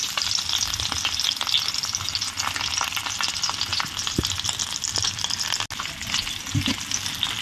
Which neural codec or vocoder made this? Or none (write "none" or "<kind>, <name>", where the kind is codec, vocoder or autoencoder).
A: none